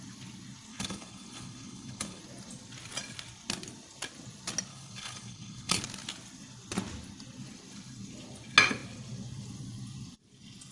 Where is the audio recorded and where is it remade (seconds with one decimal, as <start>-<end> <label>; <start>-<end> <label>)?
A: 0.0-0.7 recorded; 0.7-2.2 remade; 2.2-4.7 recorded; 4.7-5.8 remade; 5.8-10.7 recorded